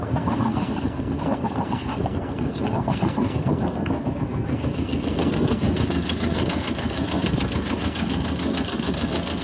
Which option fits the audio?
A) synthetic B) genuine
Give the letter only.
A